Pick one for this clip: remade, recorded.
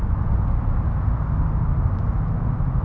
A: recorded